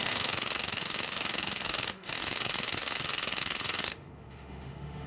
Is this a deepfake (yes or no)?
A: yes